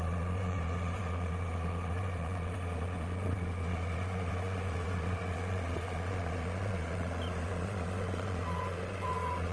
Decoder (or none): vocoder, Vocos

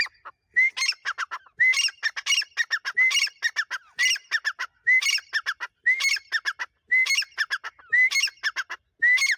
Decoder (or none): none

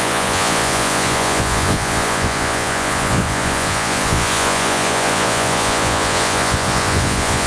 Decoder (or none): vocoder, Vocos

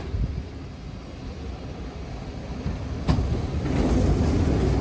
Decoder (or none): none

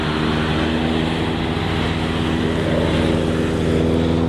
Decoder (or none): none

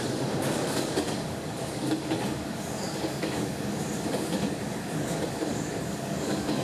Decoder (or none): codec, DAC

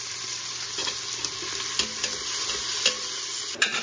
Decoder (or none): none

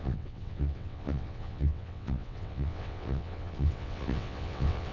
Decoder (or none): vocoder, WaveNeXt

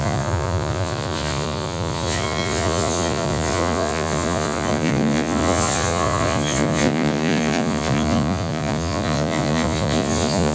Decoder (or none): vocoder, Vocos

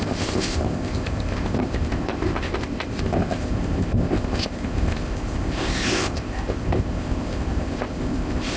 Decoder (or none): codec, ZipCodec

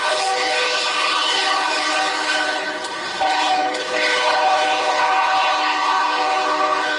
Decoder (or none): codec, HILCodec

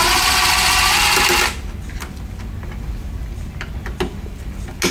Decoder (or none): none